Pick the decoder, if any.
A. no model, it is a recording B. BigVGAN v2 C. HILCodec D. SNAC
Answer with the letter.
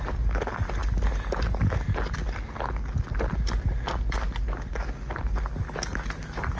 A